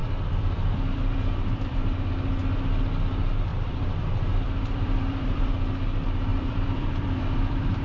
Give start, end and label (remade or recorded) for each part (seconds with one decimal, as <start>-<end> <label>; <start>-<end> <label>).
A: 0.0-2.1 remade; 2.1-3.5 recorded; 3.5-5.5 remade; 5.5-6.3 recorded; 6.3-7.8 remade